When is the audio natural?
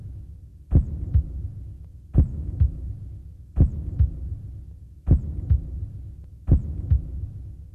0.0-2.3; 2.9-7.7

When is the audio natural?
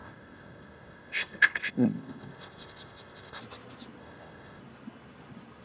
3.4-4.0; 4.6-5.6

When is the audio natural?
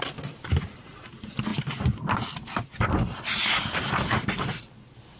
0.0-5.2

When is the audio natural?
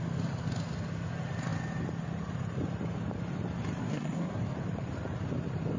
0.0-3.8; 4.4-5.8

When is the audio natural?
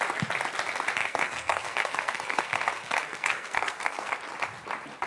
0.0-1.0; 4.1-5.1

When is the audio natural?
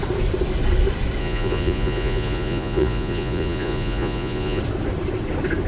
0.0-1.2; 4.6-5.7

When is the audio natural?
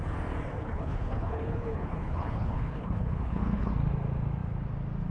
0.0-0.6; 3.7-5.1